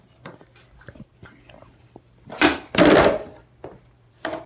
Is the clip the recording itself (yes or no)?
no